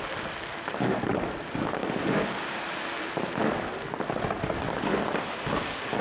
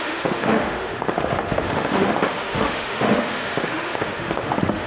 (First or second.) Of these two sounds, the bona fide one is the first